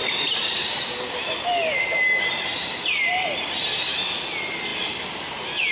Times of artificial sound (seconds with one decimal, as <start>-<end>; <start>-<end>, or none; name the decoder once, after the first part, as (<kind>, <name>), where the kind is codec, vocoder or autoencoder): none